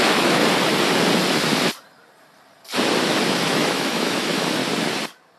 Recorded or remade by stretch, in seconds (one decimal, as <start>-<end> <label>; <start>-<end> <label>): 0.0-0.4 remade; 0.4-3.3 recorded; 3.3-4.6 remade; 4.6-5.4 recorded